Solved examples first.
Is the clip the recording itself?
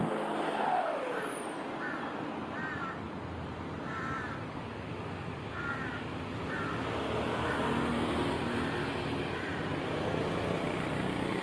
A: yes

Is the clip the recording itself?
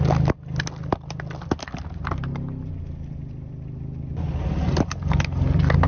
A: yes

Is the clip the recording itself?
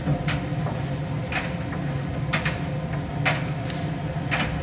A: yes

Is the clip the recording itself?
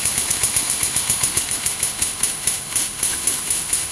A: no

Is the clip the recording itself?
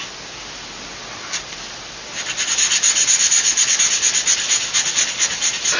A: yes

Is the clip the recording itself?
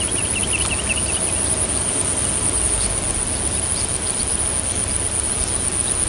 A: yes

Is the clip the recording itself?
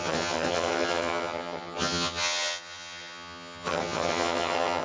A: no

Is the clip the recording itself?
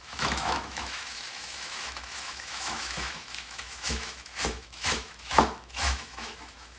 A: no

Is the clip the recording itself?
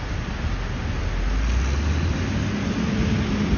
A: yes